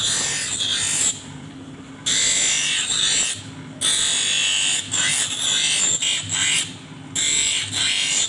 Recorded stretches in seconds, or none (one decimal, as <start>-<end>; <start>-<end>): 0.0-0.7; 3.4-8.3